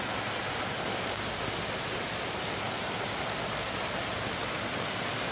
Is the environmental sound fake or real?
real